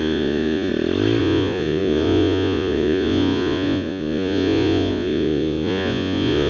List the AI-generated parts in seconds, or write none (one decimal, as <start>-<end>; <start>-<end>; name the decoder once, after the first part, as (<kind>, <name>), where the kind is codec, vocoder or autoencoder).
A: 0.0-0.7 (vocoder, Vocos); 1.2-6.5